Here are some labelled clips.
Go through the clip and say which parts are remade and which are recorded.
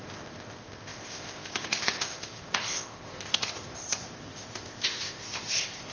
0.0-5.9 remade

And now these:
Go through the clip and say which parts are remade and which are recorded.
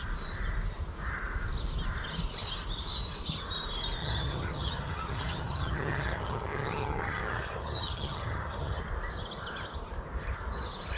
0.0-4.0 recorded; 4.0-8.8 remade; 8.8-11.0 recorded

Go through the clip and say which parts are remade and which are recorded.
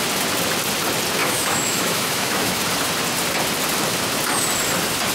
0.0-1.2 recorded; 1.2-2.6 remade; 2.6-5.1 recorded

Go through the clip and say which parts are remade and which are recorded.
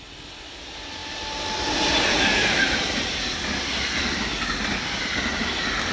0.0-5.9 recorded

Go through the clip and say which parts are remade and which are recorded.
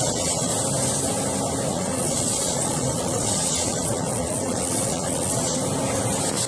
0.0-0.5 remade; 0.5-1.7 recorded; 1.7-5.6 remade; 5.6-6.5 recorded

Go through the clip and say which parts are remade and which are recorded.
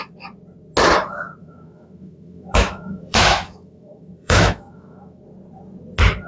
0.0-1.4 recorded; 1.4-5.2 remade; 5.2-6.3 recorded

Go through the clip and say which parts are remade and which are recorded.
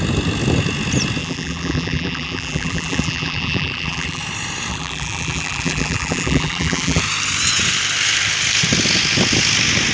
0.0-1.2 recorded; 1.2-4.2 remade; 4.2-4.7 recorded; 4.7-7.0 remade; 7.0-9.9 recorded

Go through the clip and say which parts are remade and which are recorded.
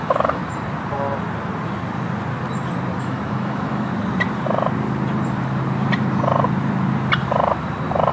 0.0-0.4 remade; 0.4-3.0 recorded; 3.0-3.9 remade; 3.9-8.1 recorded